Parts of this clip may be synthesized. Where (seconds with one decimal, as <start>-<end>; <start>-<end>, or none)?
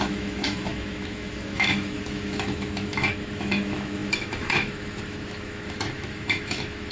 0.0-6.9